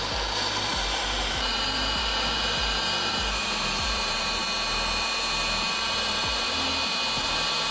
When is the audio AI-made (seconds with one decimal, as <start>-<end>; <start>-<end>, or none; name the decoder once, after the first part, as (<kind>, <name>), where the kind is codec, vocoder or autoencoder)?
0.0-4.4 (vocoder, BigVGAN v2); 5.7-6.7; 7.2-7.7